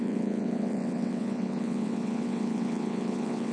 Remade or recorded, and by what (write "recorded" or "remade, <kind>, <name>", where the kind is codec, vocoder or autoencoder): remade, vocoder, WaveNeXt